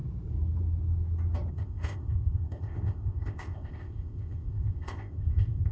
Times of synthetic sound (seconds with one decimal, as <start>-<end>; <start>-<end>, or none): 1.5-5.7